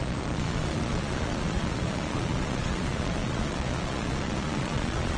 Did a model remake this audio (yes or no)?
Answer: yes